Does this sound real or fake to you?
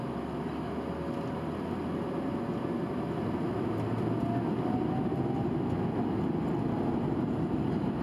real